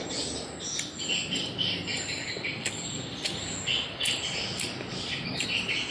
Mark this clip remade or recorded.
recorded